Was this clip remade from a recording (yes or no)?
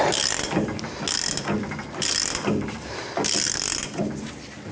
no